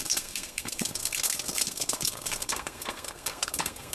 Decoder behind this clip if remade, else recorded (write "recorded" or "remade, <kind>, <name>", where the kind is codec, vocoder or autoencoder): remade, codec, SNAC